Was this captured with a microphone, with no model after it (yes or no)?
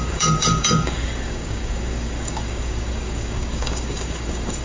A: no